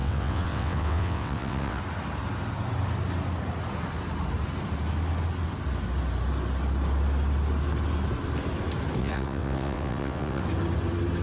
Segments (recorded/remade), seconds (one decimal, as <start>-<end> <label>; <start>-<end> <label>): 0.0-1.8 remade; 1.8-9.0 recorded; 9.0-10.4 remade; 10.4-11.2 recorded